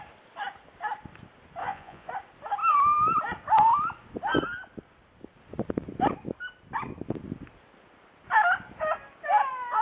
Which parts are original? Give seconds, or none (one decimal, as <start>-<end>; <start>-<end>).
0.0-1.6; 2.1-9.8